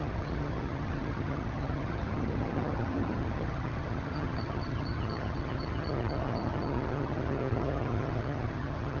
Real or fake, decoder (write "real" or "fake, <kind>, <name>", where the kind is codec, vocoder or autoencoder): fake, vocoder, HiFi-GAN